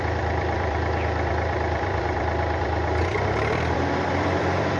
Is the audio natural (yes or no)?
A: no